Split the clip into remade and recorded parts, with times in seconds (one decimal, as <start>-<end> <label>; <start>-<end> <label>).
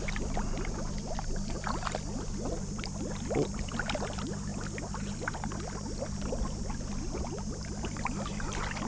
0.0-8.9 recorded